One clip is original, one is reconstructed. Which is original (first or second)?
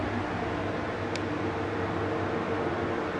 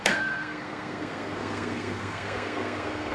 first